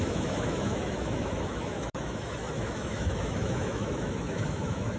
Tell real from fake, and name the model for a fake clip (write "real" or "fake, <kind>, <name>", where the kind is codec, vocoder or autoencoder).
fake, autoencoder, DAC-VAE